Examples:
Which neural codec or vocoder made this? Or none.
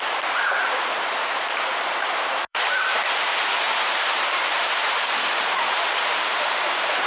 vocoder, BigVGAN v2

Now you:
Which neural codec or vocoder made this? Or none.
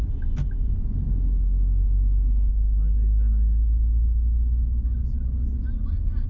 none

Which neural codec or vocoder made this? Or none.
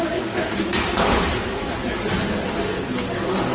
none